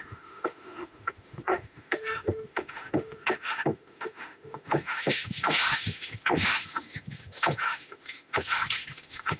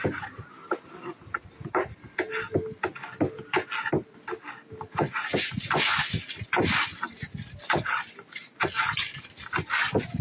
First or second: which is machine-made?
first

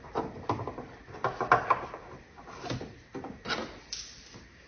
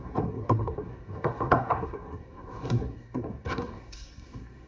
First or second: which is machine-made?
second